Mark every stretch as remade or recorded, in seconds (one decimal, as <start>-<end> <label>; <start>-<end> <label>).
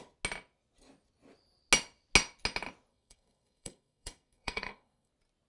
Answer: 0.0-2.9 recorded; 2.9-5.1 remade; 5.1-5.5 recorded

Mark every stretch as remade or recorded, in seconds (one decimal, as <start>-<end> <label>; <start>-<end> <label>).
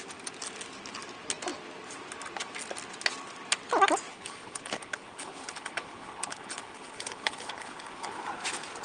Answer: 0.0-4.1 recorded; 4.1-8.2 remade; 8.2-8.8 recorded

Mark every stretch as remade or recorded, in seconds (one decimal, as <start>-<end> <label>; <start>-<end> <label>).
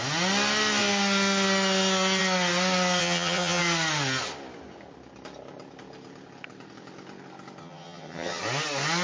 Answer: 0.0-3.0 recorded; 3.0-3.6 remade; 3.6-7.6 recorded; 7.6-8.4 remade; 8.4-9.0 recorded